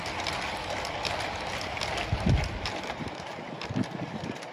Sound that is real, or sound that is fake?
real